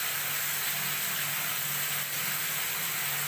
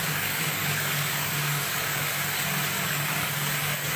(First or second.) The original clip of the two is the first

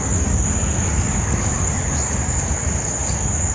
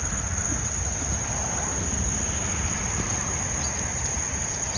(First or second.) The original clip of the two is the second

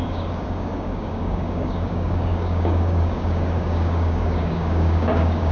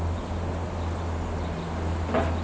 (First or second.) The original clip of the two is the second